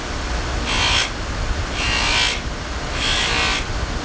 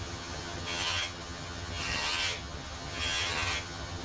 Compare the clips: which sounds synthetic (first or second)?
second